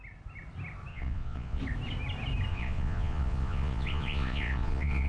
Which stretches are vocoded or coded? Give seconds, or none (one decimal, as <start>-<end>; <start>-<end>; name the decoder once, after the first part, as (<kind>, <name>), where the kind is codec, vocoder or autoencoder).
0.9-1.6 (vocoder, Vocos); 2.5-5.1